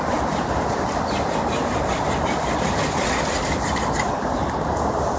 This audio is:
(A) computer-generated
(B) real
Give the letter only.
B